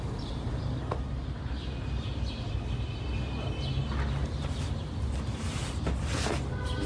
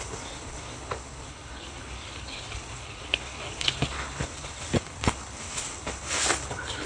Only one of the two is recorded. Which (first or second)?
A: first